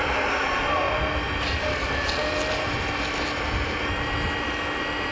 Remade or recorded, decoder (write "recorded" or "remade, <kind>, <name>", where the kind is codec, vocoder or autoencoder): recorded